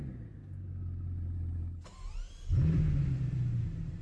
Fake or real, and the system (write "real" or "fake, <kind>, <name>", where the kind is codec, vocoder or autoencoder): real